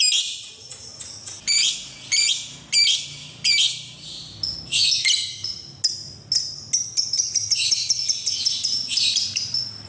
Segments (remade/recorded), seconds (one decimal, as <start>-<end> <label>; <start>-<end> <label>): 0.0-9.9 recorded